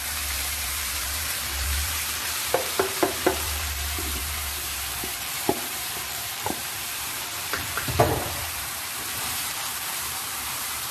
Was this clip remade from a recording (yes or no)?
yes